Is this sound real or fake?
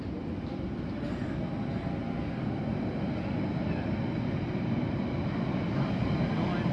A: real